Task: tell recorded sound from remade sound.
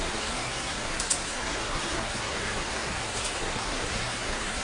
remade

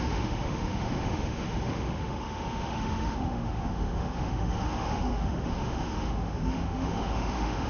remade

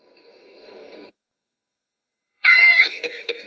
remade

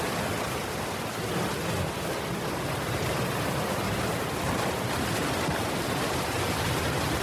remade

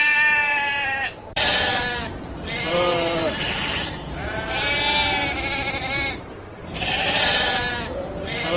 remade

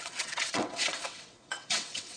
remade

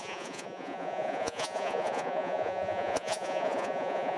remade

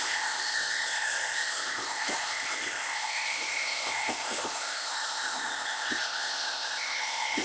remade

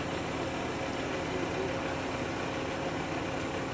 recorded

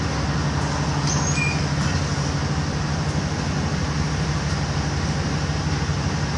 recorded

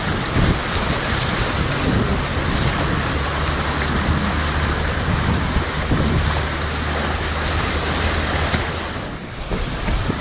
recorded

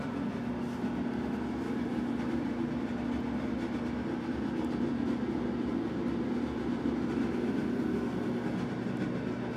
recorded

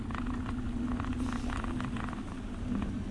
recorded